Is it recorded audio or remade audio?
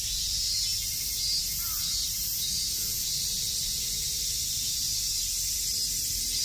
recorded